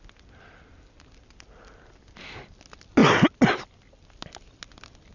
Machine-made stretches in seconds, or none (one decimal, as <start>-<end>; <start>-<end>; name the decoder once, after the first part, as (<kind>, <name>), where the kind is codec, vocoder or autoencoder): none